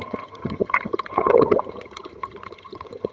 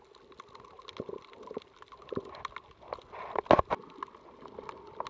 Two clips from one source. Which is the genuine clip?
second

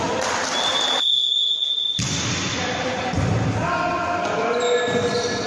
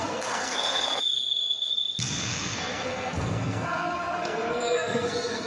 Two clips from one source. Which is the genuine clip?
first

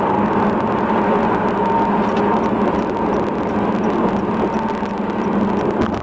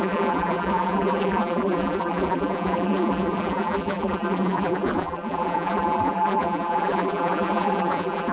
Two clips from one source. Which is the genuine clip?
first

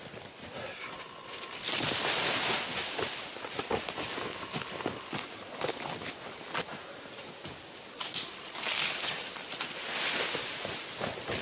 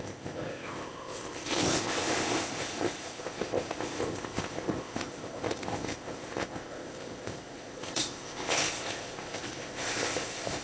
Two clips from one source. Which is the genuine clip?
first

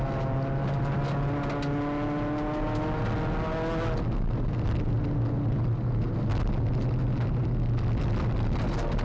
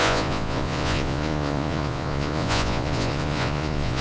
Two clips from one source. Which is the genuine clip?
first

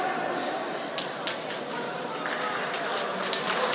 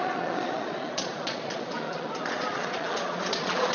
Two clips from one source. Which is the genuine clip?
first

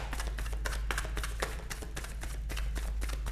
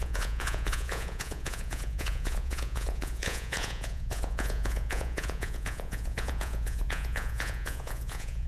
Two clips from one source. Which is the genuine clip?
first